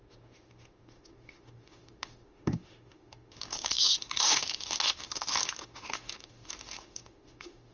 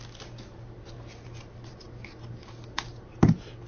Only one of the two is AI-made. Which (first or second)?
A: first